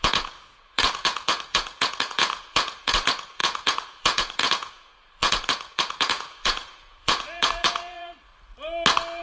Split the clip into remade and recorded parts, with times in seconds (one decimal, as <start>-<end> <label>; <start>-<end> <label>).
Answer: 0.0-8.3 remade; 8.3-9.2 recorded